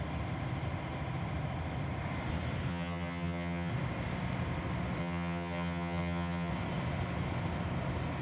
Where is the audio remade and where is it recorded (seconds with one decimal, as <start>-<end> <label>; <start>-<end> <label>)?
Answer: 0.0-2.7 recorded; 2.7-3.7 remade; 3.7-5.0 recorded; 5.0-6.5 remade; 6.5-8.2 recorded